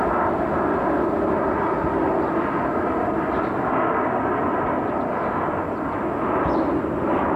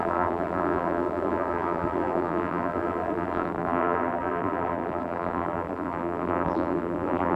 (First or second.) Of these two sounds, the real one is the first